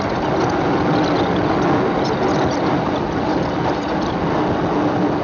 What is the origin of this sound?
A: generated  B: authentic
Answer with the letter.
B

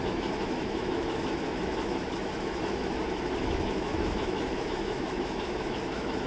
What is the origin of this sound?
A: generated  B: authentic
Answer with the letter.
A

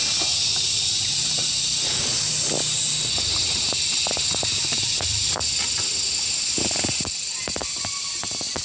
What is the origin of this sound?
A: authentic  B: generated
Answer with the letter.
A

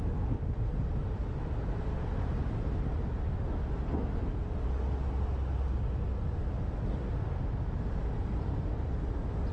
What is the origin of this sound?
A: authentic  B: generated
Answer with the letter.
A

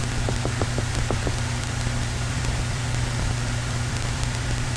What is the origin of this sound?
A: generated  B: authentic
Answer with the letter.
A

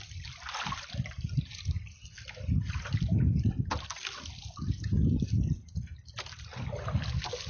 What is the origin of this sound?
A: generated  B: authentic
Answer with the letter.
B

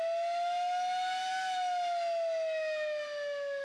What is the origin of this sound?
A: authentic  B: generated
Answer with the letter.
A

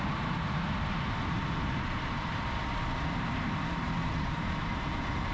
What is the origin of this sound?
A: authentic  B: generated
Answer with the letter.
B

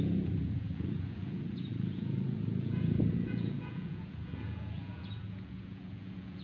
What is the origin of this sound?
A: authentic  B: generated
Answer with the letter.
B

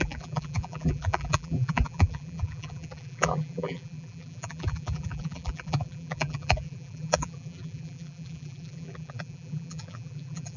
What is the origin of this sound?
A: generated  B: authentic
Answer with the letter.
A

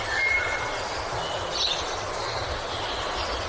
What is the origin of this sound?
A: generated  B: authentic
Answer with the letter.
B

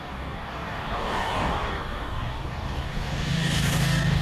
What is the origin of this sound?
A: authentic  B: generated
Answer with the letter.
B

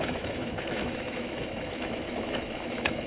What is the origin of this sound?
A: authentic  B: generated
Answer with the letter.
B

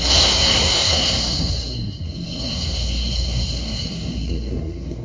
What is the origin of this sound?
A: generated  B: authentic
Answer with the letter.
A